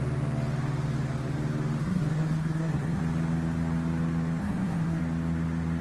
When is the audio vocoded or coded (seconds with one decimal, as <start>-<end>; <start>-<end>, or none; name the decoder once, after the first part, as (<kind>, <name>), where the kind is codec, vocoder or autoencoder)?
1.8-3.0 (codec, SNAC); 4.4-5.0